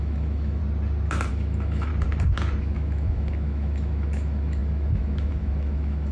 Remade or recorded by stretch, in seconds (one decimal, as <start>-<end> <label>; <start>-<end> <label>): 0.0-0.6 remade; 0.6-1.3 recorded; 1.3-1.9 remade; 1.9-2.6 recorded; 2.6-6.1 remade